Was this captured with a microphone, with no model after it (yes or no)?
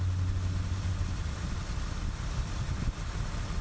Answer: yes